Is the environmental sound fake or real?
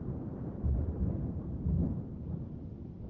fake